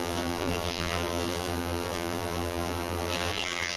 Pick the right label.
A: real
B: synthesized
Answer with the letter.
B